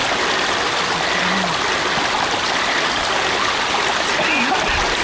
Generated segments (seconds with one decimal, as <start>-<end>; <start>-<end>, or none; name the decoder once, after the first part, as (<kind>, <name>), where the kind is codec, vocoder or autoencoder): none